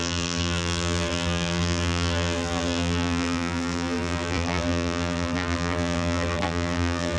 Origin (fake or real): fake